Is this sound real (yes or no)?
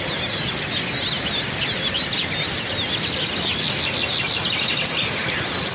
yes